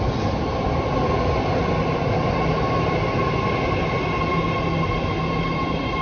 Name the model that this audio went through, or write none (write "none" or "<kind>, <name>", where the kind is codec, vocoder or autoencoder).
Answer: none